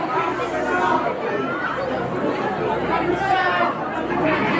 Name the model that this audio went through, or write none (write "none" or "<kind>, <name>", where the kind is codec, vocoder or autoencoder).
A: none